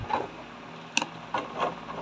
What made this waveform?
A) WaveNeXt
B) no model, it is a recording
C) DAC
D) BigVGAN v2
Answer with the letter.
B